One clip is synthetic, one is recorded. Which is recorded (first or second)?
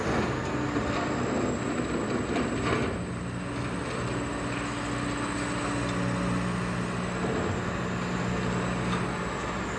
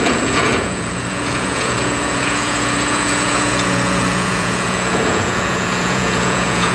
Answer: first